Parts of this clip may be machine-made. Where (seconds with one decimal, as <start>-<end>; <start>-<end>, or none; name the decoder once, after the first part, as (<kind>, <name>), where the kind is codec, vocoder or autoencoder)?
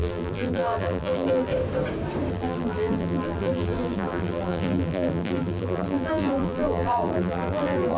0.0-1.5 (vocoder, BigVGAN v2); 2.3-8.0